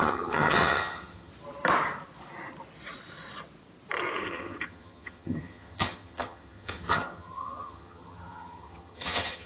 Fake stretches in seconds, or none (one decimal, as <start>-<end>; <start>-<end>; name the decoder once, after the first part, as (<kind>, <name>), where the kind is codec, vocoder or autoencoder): 0.0-1.3 (vocoder, HiFi-GAN); 4.2-9.5